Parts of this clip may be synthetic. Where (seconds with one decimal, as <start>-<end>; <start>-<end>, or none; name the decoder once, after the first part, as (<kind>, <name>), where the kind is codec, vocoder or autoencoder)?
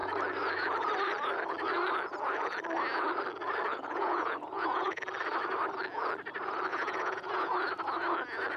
3.7-5.0 (vocoder, Vocos); 6.7-7.5